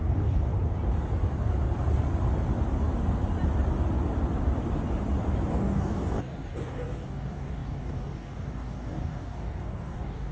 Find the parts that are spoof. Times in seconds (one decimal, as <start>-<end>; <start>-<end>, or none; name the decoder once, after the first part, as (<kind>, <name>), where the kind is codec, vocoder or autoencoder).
0.0-0.5 (codec, DAC); 5.5-10.3